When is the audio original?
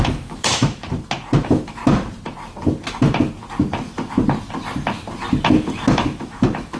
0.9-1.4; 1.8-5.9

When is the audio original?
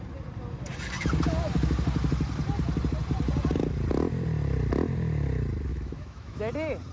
0.0-5.7; 6.5-6.9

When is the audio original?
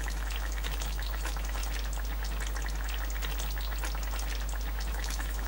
1.6-4.9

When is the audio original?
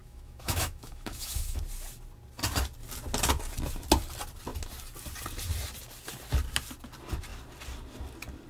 1.6-8.5